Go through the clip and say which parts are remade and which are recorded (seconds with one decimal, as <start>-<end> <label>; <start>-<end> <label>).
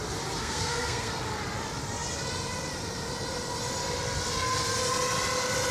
0.0-0.4 recorded; 0.4-1.1 remade; 1.1-5.7 recorded